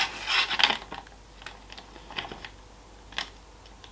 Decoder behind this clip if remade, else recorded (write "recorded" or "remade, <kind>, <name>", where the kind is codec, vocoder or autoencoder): recorded